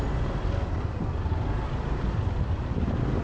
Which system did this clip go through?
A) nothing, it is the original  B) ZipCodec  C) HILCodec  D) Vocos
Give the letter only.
A